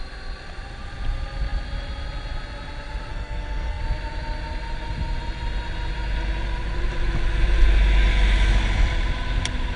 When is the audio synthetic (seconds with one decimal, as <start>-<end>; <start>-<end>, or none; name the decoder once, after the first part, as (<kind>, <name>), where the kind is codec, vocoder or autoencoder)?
3.1-3.8 (codec, SNAC)